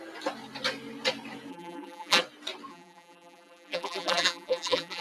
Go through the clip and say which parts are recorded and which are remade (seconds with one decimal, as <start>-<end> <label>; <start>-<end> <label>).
0.0-1.5 recorded; 1.5-2.2 remade; 2.2-2.7 recorded; 2.7-5.0 remade